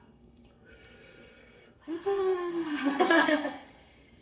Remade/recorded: remade